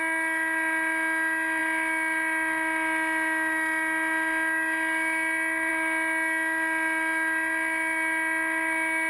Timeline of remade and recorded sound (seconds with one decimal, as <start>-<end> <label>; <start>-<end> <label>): 0.0-9.1 recorded